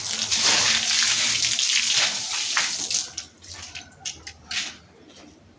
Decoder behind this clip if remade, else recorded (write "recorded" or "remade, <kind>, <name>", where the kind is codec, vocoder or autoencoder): recorded